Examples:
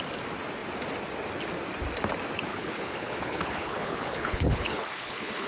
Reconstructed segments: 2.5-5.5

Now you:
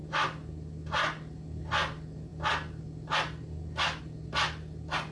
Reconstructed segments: none

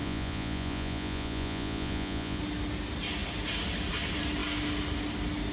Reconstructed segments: 0.0-2.4

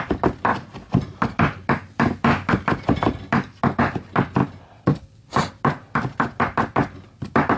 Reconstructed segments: 4.4-5.0